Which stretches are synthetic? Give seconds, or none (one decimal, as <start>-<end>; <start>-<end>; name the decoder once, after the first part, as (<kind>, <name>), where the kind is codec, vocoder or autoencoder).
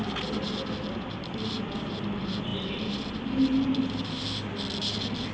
none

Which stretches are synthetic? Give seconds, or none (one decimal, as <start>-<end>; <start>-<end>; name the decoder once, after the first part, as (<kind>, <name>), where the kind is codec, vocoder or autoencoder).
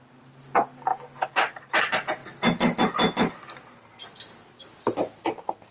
none